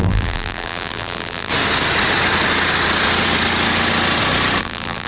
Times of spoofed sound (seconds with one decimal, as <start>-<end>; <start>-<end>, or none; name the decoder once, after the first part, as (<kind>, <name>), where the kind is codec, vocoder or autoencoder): 0.0-1.5 (vocoder, BigVGAN v2); 4.6-5.1

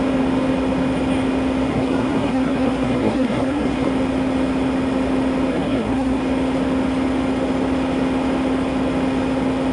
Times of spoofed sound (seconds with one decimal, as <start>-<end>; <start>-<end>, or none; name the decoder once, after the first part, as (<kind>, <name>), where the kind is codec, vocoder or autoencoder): 1.7-3.9 (codec, SNAC); 5.5-6.2

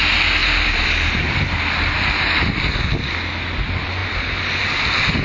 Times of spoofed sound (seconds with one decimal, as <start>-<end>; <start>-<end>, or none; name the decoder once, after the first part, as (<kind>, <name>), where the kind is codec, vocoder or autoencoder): 0.4-1.4 (vocoder, BigVGAN v2); 4.0-4.6

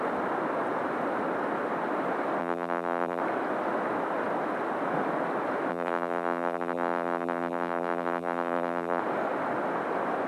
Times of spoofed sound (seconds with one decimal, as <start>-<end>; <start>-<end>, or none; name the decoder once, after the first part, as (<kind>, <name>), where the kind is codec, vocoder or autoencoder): 2.4-3.2 (vocoder, BigVGAN v2); 5.7-9.0

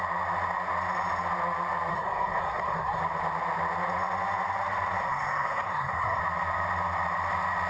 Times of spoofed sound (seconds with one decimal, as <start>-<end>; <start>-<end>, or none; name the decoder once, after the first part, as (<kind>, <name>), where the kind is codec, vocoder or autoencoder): 1.9-3.0 (codec, SNAC); 5.0-6.2

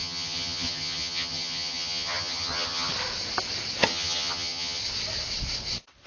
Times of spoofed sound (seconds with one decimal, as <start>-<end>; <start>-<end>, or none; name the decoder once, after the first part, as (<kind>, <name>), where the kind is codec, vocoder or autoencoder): 0.0-2.9 (vocoder, HiFi-GAN); 3.9-4.8

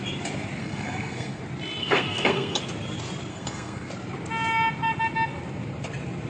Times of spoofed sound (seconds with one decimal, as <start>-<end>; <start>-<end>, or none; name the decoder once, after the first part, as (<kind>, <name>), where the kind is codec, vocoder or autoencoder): 0.6-1.4 (codec, SNAC); 1.8-2.6; 3.3-3.9